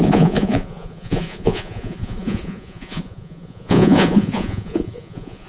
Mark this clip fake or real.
fake